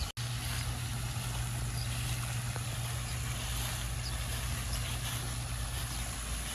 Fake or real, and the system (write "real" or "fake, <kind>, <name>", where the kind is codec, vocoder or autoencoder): real